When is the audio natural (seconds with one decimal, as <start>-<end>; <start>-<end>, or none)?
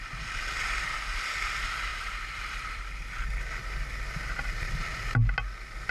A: 0.0-1.9; 3.6-5.9